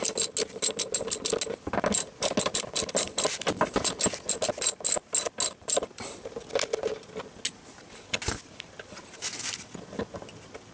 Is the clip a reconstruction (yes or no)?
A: no